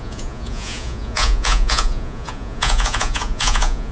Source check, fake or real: fake